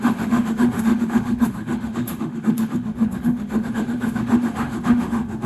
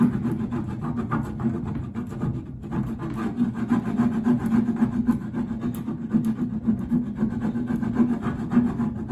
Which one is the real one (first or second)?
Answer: second